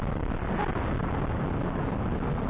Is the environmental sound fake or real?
real